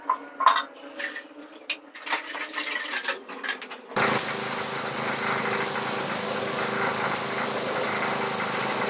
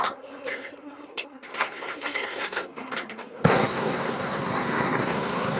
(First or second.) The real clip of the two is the first